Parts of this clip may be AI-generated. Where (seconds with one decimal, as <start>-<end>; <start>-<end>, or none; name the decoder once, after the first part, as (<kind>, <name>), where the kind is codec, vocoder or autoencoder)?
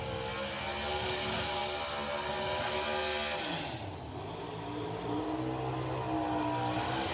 none